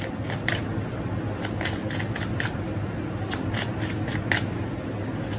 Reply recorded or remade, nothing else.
recorded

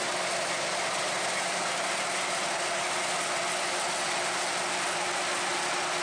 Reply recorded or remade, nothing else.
recorded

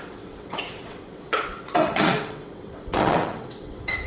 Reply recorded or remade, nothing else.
remade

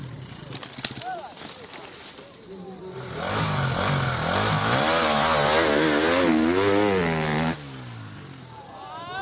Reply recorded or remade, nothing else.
recorded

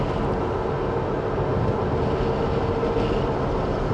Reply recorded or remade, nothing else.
recorded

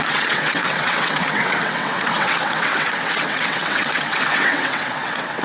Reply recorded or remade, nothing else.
remade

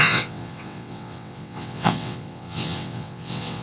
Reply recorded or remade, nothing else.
remade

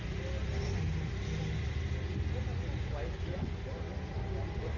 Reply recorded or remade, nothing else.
recorded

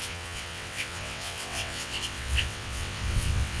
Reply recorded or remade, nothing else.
remade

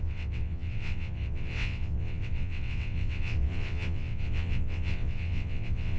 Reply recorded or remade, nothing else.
remade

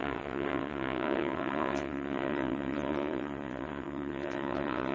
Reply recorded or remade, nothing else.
remade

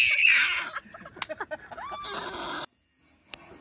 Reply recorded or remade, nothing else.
recorded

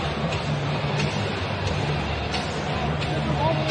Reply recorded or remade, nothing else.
recorded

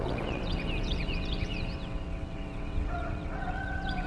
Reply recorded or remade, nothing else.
remade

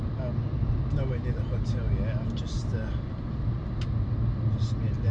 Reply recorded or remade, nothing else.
recorded